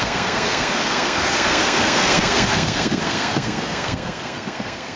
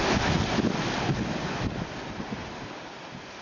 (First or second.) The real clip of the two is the second